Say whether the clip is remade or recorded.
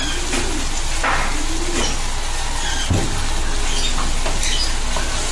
recorded